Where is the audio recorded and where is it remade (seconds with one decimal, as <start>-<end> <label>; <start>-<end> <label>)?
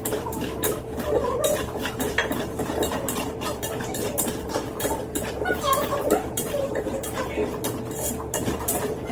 0.0-7.4 remade; 7.4-8.1 recorded; 8.1-9.1 remade